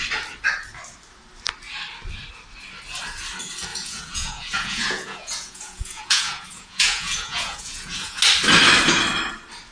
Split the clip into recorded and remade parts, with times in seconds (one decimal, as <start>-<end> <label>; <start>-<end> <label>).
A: 0.0-3.7 recorded; 3.7-8.2 remade; 8.2-9.7 recorded